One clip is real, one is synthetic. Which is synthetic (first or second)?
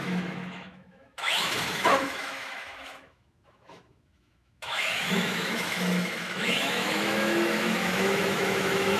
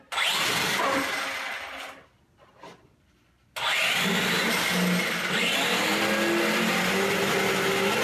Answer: first